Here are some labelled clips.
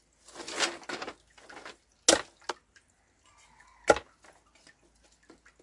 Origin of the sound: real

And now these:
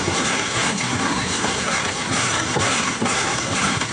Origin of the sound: fake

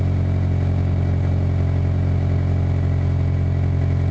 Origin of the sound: real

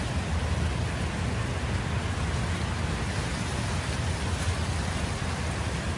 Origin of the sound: real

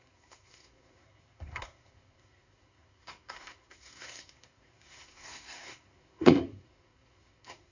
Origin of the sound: fake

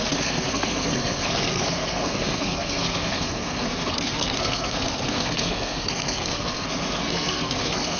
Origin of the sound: fake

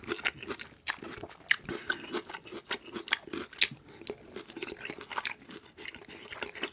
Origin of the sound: real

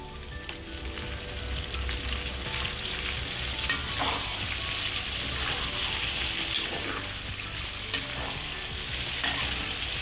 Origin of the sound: real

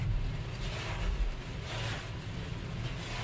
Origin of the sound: real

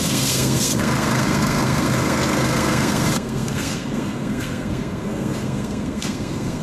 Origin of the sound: fake